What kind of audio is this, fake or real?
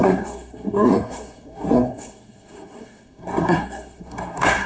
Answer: fake